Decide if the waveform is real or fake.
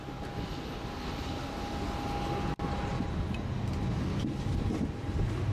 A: real